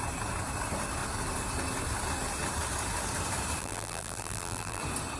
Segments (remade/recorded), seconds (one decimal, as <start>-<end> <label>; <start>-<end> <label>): 0.0-3.6 recorded; 3.6-4.8 remade; 4.8-5.2 recorded